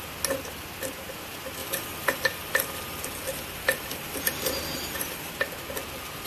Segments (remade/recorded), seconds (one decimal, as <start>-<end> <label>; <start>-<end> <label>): 0.0-1.6 recorded; 1.6-5.3 remade; 5.3-6.3 recorded